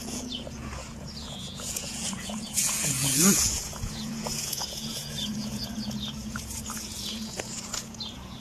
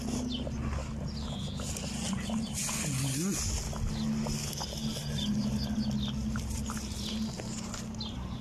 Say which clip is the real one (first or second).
second